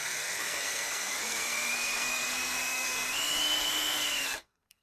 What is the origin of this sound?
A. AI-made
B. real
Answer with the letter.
A